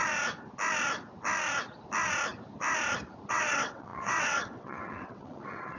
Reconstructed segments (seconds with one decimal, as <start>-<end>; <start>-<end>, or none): 3.3-5.8